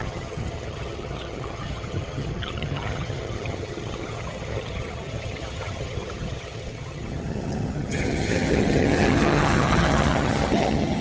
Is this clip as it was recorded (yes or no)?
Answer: no